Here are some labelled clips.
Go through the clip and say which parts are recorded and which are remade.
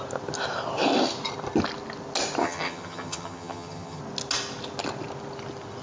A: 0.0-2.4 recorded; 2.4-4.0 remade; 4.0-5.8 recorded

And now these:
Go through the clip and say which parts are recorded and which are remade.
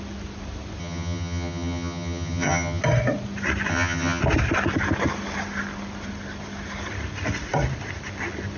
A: 0.0-0.8 recorded; 0.8-2.8 remade; 2.8-3.7 recorded; 3.7-4.2 remade; 4.2-8.6 recorded